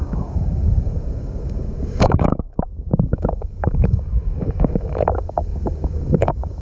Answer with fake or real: fake